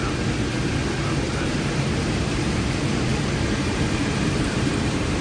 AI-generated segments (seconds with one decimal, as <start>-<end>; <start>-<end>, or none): 1.3-5.2